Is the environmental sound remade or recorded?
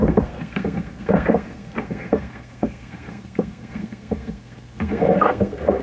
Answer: remade